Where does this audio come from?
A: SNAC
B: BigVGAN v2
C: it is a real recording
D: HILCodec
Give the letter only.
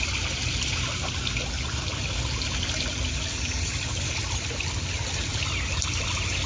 C